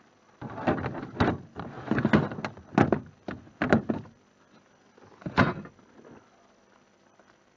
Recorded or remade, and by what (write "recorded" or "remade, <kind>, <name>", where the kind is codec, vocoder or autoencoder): recorded